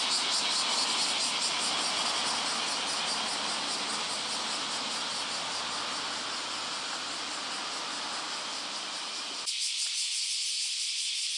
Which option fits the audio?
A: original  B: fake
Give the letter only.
A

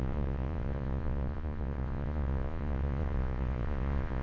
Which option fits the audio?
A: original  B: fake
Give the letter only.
B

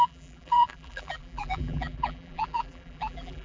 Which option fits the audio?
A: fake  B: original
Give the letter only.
A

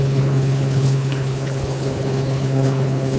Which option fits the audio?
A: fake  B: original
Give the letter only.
A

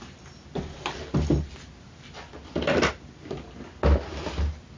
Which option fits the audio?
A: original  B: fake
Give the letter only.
A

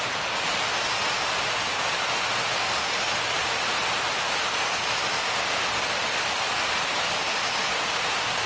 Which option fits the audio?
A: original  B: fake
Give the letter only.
A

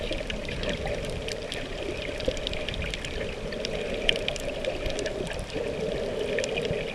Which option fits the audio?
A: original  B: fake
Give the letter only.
A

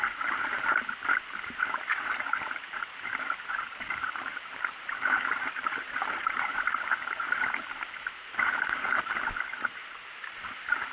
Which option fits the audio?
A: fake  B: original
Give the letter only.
A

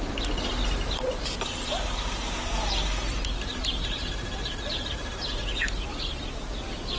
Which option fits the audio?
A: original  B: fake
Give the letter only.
A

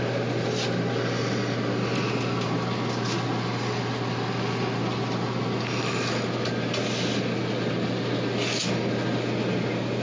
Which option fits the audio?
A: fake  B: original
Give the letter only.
B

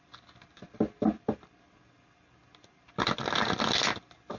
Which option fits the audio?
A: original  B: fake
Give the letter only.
A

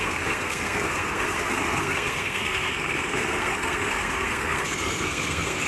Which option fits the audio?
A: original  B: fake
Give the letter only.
B